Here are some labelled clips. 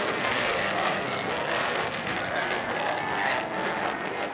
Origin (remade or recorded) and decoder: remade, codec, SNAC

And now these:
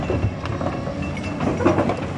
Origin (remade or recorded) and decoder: recorded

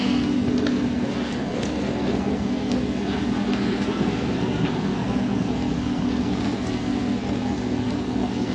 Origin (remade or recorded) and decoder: remade, codec, SNAC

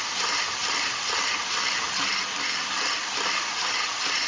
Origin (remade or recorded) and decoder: recorded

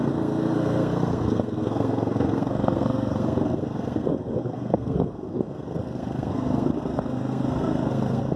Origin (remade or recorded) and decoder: remade, codec, SNAC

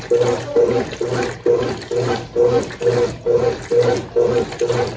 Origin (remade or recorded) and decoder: recorded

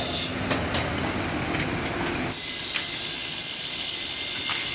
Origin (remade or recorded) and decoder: recorded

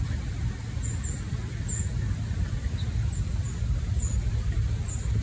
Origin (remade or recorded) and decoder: recorded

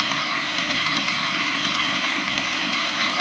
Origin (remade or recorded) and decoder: remade, codec, SNAC